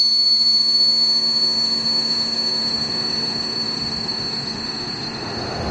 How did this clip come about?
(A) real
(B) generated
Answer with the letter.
B